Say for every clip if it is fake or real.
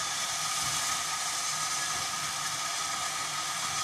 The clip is real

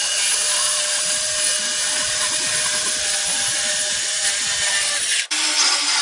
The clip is real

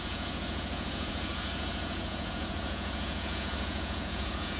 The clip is fake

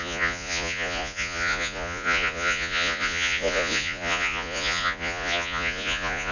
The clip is fake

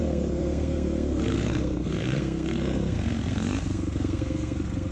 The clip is fake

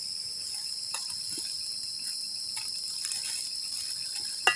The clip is real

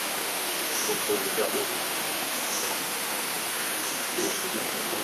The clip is fake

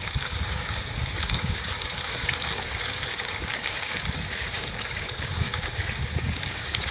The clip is fake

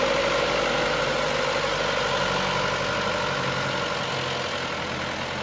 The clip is real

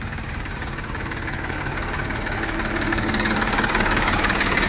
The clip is fake